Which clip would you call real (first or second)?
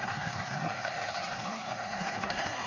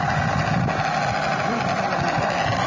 second